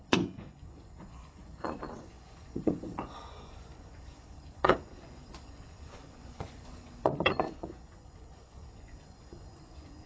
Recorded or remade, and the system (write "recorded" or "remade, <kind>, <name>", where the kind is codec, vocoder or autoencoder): remade, vocoder, Vocos